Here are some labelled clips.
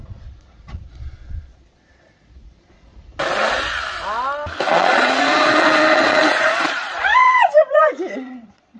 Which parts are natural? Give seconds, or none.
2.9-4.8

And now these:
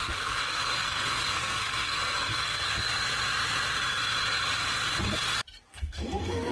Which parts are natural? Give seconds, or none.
2.9-5.7